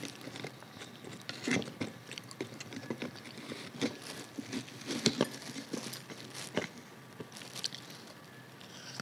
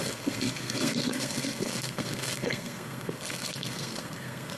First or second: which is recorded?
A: first